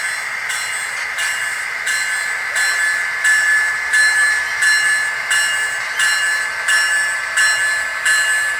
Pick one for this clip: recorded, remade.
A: recorded